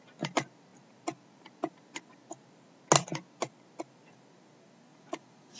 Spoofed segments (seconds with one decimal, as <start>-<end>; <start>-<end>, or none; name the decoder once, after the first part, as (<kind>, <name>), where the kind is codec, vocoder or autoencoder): 4.9-5.6 (vocoder, Vocos)